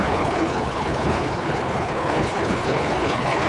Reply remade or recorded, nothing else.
remade